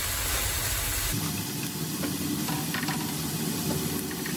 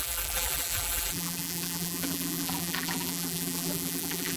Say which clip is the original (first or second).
first